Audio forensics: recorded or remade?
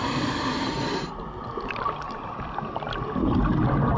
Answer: recorded